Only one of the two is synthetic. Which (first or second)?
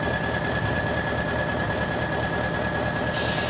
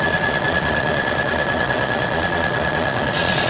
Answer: second